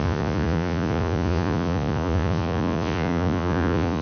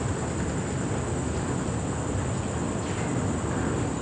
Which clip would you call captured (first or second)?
second